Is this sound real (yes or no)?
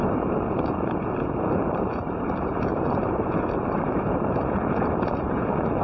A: no